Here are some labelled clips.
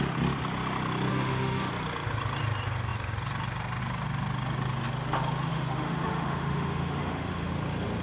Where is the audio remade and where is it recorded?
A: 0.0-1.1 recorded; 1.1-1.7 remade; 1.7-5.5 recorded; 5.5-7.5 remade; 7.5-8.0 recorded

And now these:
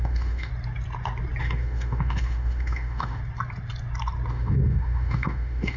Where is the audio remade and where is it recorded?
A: 0.0-0.5 remade; 0.5-1.4 recorded; 1.4-3.2 remade; 3.2-4.3 recorded; 4.3-5.8 remade